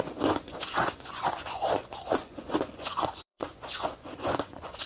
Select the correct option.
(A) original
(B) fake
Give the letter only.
B